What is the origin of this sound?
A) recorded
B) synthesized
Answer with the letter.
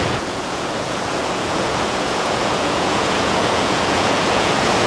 B